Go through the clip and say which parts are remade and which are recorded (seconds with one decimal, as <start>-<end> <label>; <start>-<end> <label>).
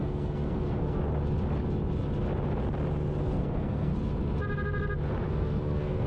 0.0-1.0 remade; 1.0-3.2 recorded; 3.2-3.9 remade; 3.9-5.3 recorded; 5.3-6.1 remade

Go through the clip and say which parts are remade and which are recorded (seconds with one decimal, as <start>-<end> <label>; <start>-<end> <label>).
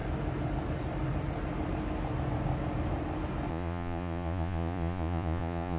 0.0-3.5 recorded; 3.5-5.8 remade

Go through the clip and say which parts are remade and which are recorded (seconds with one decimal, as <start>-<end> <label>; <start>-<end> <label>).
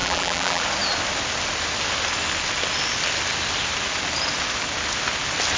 0.0-0.6 remade; 0.6-5.6 recorded